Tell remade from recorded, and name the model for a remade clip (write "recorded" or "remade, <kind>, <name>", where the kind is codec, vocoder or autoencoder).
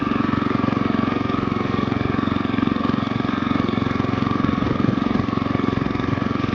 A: remade, codec, SNAC